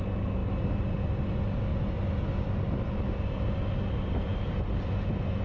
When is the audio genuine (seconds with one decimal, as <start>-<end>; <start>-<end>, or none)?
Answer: 0.0-5.4